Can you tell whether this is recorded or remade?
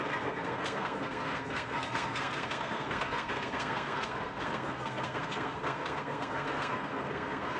remade